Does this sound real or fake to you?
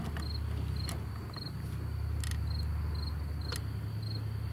real